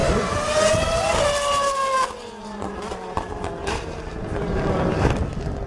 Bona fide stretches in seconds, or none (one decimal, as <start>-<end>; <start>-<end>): 0.0-2.4; 5.2-5.7